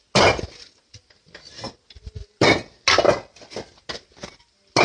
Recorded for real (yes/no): yes